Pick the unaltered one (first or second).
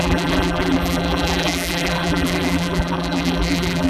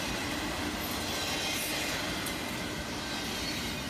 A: second